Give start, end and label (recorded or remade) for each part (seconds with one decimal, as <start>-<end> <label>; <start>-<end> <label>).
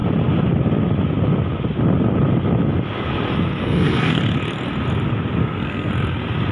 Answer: 0.0-3.6 recorded; 3.6-4.2 remade; 4.2-5.4 recorded; 5.4-5.9 remade; 5.9-6.5 recorded